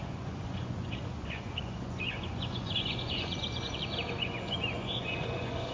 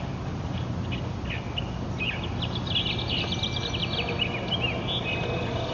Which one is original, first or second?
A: second